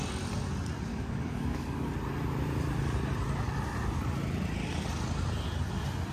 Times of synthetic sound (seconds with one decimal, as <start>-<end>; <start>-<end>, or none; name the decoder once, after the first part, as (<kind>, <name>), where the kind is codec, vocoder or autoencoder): 0.9-1.9 (codec, DAC)